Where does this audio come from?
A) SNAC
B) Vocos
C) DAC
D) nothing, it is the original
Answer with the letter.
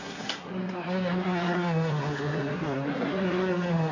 A